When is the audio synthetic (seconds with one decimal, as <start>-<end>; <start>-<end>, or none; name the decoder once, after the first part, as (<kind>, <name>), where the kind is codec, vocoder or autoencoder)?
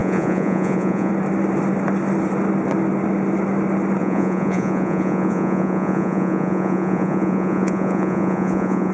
0.0-1.1 (vocoder, Vocos); 4.0-8.9